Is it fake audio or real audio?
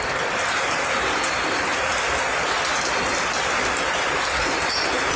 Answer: real